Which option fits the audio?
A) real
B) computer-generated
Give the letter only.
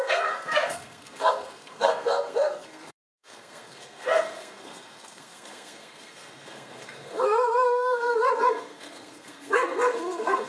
B